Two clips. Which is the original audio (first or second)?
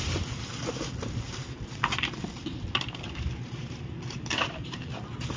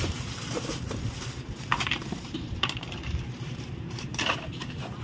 first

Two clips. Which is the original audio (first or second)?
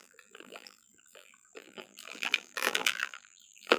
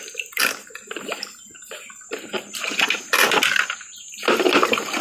second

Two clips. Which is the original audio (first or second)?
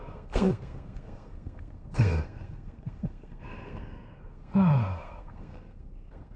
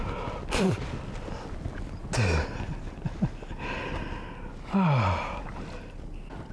second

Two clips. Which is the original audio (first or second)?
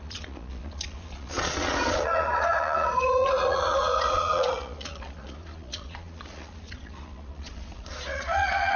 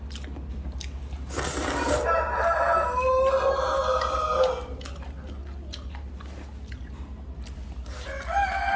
second